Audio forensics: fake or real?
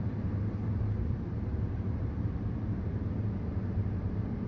fake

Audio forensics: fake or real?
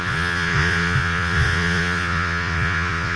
fake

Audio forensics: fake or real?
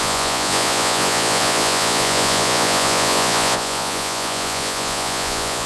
fake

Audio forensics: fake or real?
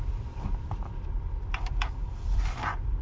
fake